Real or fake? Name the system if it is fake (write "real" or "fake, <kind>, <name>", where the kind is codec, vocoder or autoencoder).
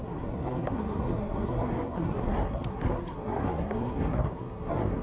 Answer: fake, codec, SNAC